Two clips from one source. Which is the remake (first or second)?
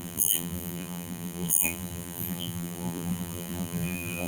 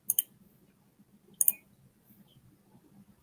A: first